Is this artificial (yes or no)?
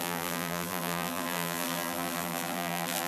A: yes